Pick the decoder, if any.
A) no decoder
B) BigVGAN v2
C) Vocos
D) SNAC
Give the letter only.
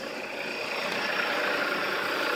A